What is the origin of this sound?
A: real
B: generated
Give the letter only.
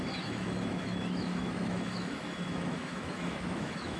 B